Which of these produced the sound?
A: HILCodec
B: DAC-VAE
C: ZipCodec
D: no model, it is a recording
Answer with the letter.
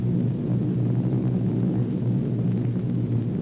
D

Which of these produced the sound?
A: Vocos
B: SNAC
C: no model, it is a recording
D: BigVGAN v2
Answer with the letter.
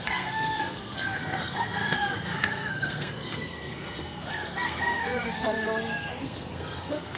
B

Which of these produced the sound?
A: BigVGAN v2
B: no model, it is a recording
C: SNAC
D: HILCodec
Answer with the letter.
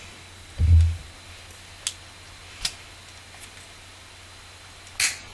B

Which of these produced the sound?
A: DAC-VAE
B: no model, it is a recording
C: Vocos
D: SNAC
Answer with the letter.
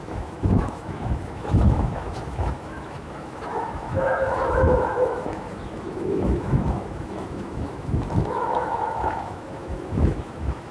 A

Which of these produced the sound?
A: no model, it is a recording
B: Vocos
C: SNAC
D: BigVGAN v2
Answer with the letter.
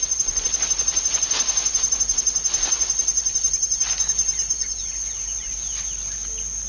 A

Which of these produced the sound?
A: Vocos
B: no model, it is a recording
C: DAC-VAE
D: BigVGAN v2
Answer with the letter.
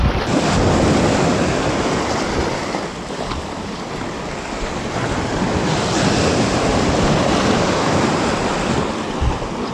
B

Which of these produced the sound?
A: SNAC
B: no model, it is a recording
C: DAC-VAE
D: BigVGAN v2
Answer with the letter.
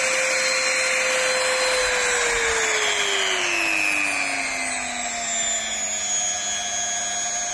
B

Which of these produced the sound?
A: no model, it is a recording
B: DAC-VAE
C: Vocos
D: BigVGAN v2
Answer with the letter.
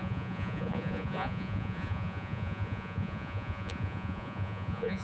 C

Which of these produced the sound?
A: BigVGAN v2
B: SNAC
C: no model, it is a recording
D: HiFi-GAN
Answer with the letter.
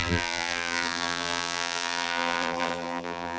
A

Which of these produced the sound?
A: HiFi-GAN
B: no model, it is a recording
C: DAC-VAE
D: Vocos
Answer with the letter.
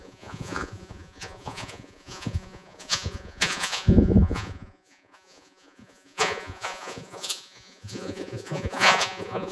D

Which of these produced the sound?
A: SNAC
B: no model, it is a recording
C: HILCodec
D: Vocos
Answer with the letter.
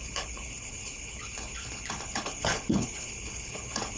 C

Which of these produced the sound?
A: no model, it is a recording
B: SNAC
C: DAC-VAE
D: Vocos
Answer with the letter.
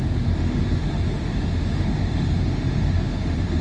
C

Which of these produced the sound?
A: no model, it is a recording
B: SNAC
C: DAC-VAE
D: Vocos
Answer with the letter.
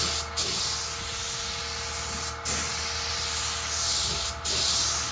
A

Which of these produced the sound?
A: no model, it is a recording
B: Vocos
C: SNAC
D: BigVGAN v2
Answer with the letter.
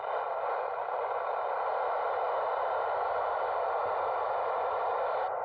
D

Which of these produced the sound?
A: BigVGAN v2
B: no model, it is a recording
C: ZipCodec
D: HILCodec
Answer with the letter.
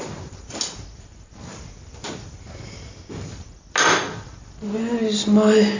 B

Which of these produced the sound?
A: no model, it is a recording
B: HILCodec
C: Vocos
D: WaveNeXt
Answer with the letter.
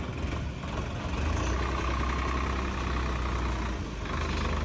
A